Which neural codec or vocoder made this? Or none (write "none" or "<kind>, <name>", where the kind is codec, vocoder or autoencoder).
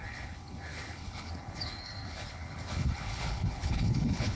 codec, HILCodec